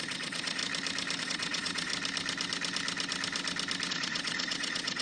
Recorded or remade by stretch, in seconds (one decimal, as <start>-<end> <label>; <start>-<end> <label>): 0.0-0.6 remade; 0.6-1.2 recorded; 1.2-1.9 remade; 1.9-3.9 recorded; 3.9-5.0 remade